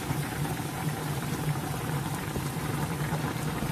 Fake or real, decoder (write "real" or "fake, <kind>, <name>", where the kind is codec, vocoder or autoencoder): fake, vocoder, BigVGAN v2